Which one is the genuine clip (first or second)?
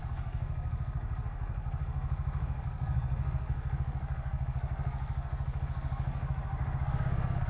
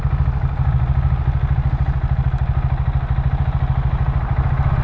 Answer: second